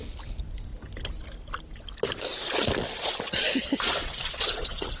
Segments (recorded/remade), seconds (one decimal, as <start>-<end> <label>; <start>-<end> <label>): 0.0-2.6 recorded; 2.6-5.0 remade